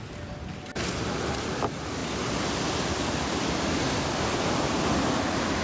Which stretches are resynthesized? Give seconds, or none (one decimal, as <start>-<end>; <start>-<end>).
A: none